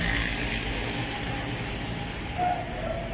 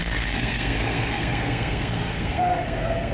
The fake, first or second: second